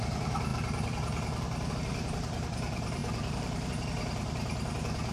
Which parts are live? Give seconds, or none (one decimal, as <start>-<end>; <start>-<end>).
none